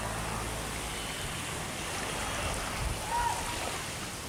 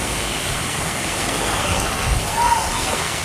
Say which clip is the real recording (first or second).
first